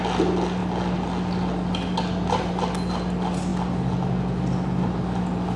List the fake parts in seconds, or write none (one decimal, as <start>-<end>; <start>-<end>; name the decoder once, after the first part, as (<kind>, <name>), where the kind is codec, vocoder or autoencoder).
none